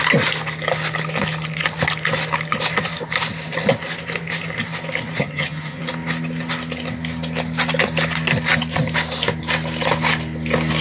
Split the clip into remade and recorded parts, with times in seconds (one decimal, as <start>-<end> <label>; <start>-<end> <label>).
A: 0.0-5.2 recorded; 5.2-5.8 remade; 5.8-10.8 recorded